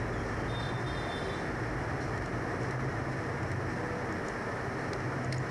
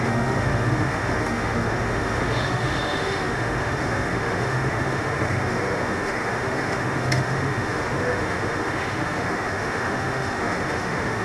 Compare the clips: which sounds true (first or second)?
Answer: first